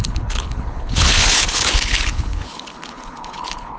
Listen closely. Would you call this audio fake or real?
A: fake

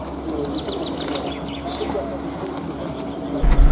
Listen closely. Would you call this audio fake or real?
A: real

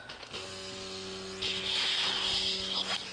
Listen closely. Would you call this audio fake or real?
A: real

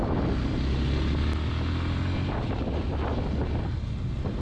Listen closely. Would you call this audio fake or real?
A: real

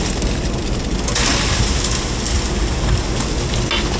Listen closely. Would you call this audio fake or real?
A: real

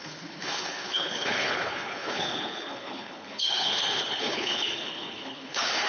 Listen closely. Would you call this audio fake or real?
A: fake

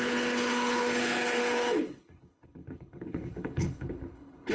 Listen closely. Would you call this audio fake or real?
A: fake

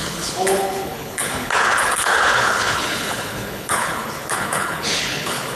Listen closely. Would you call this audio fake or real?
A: fake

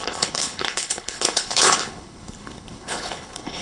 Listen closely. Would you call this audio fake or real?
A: fake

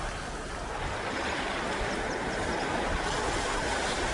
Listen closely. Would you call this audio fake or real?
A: real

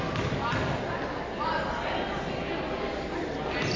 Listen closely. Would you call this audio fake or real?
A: real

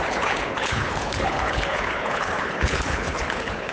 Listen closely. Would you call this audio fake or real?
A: fake